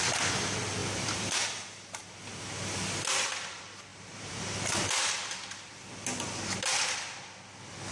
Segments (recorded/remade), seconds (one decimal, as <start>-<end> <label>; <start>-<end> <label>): 0.0-0.8 recorded; 0.8-2.0 remade; 2.0-3.9 recorded; 3.9-5.8 remade; 5.8-7.9 recorded